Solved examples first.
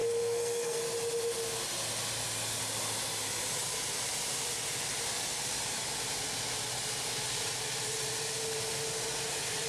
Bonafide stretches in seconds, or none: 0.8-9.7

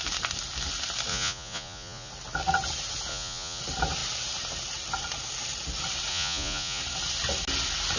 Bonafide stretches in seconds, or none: 0.0-1.1; 2.1-3.1; 3.6-6.1; 6.8-8.0

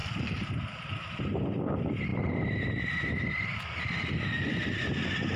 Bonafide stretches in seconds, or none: 0.0-5.4

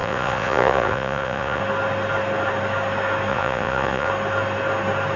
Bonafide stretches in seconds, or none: 1.6-3.3; 4.1-5.2

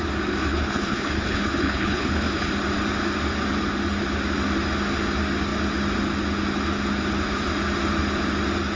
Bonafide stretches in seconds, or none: 0.0-0.5; 2.5-8.8